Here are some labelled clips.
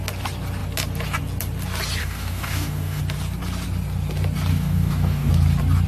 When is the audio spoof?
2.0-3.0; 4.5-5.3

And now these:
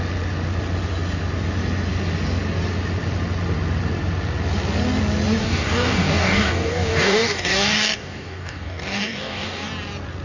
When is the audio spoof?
5.4-9.7

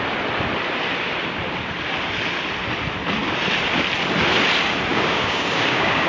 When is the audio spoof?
4.9-6.1

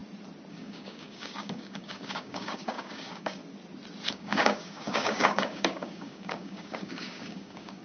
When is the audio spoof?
0.5-3.4; 4.1-7.8

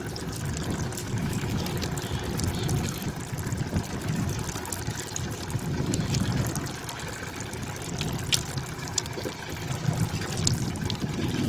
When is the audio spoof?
1.0-1.6

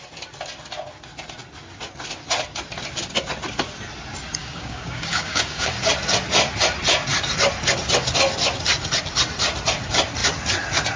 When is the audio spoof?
4.4-5.7

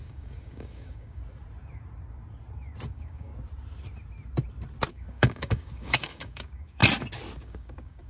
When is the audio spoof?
0.0-1.2; 2.9-3.3; 4.9-6.8; 7.4-8.1